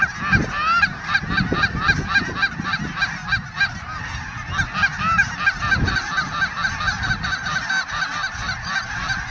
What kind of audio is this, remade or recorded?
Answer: recorded